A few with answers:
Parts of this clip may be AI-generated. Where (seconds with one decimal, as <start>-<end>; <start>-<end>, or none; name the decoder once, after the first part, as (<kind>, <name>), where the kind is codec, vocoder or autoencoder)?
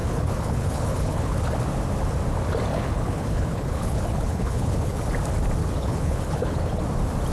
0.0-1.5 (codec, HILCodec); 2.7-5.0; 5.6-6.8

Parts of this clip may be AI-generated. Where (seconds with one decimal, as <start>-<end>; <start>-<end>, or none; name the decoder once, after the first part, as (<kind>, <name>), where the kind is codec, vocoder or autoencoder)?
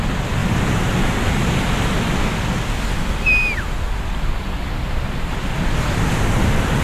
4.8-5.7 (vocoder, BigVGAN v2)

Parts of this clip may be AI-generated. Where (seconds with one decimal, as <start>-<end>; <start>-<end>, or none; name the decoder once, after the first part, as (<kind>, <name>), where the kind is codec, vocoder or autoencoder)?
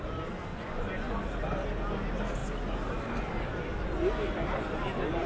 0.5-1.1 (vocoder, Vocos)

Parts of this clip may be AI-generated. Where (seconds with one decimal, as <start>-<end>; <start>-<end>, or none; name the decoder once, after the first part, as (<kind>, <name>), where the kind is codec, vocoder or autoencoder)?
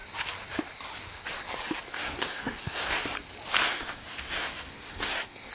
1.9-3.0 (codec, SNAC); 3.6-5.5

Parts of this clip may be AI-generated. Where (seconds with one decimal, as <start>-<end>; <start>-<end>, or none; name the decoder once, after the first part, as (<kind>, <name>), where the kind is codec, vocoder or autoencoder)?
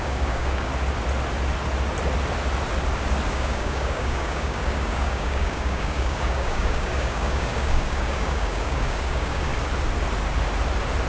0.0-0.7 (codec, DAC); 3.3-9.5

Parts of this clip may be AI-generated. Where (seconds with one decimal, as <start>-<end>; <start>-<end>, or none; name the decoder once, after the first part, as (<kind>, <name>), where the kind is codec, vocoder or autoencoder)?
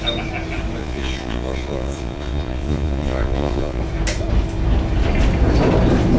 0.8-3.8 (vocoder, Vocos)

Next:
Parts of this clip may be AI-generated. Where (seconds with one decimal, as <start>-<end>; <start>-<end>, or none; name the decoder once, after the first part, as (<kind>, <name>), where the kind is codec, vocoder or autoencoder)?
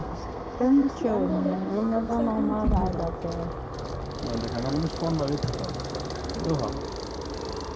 0.0-0.9 (codec, SNAC); 1.3-2.1